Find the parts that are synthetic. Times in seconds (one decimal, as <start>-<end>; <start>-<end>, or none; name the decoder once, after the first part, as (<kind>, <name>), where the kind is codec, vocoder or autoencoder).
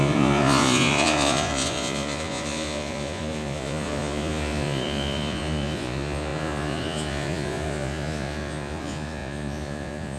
0.0-10.2 (vocoder, Vocos)